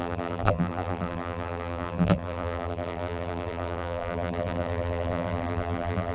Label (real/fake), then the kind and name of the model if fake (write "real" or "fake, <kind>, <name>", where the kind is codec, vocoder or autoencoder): fake, vocoder, BigVGAN v2